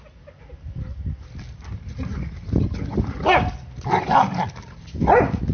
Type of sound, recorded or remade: recorded